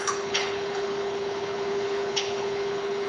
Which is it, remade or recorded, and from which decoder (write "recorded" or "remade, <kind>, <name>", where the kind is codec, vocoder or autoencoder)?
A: remade, codec, HILCodec